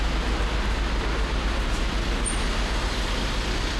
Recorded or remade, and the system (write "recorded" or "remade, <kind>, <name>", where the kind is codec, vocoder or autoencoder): recorded